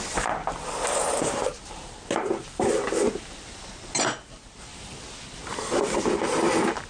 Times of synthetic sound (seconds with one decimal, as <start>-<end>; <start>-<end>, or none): 5.4-6.1

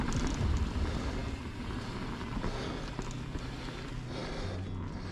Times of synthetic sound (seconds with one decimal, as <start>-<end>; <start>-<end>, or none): none

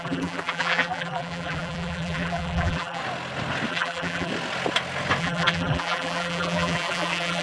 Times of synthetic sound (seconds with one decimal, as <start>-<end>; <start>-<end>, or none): 0.0-3.0; 3.7-4.3; 5.2-7.4

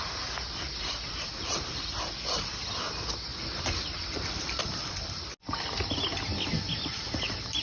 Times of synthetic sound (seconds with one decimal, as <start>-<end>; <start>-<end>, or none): 1.3-2.5; 3.3-4.6

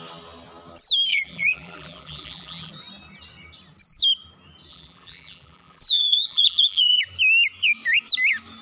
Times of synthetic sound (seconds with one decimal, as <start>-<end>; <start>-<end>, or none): 1.1-2.7; 4.7-7.0

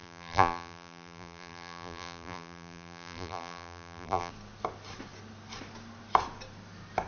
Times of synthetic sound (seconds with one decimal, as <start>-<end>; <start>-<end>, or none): 0.0-4.3